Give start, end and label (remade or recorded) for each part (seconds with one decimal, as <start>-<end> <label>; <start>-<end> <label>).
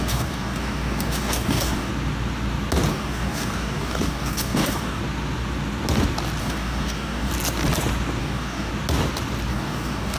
0.0-1.9 remade; 1.9-2.9 recorded; 2.9-5.0 remade; 5.0-6.4 recorded; 6.4-7.3 remade; 7.3-8.2 recorded; 8.2-8.7 remade; 8.7-9.5 recorded; 9.5-10.2 remade